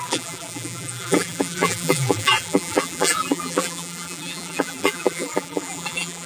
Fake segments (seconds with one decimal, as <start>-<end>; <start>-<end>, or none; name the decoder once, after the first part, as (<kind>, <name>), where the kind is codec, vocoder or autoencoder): 0.0-6.3 (vocoder, BigVGAN v2)